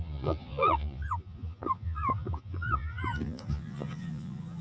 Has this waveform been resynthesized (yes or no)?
yes